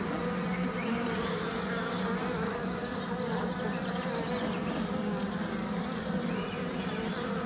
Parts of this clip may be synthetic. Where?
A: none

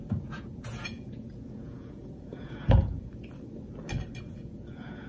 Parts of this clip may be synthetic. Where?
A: 0.0-3.1 (vocoder, Vocos); 4.2-5.1

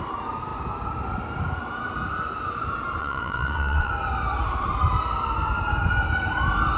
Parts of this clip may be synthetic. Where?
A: 3.0-3.9 (vocoder, WaveNeXt)

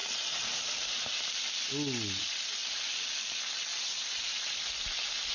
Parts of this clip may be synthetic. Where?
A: 0.0-1.5 (vocoder, BigVGAN v2); 3.7-4.7

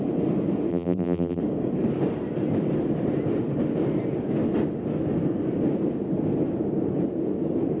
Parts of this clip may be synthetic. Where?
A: 0.7-1.4 (vocoder, BigVGAN v2)

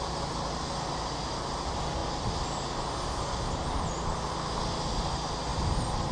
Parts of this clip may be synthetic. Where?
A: none

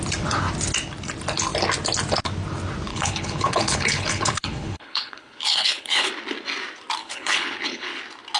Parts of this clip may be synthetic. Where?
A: 2.9-6.1 (codec, HILCodec); 7.0-8.0